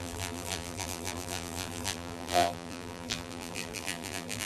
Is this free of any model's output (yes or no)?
no